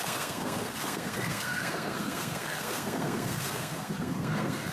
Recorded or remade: remade